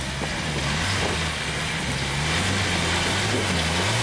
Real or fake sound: real